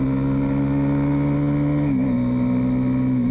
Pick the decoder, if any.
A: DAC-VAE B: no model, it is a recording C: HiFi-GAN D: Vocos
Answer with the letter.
B